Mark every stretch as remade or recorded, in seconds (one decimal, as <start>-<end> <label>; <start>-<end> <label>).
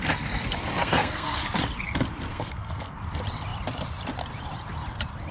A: 0.0-0.8 recorded; 0.8-1.4 remade; 1.4-2.3 recorded; 2.3-2.9 remade; 2.9-5.3 recorded